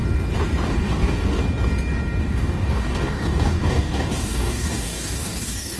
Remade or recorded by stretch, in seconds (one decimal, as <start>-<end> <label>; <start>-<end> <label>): 0.0-0.7 recorded; 0.7-1.4 remade; 1.4-2.2 recorded; 2.2-5.8 remade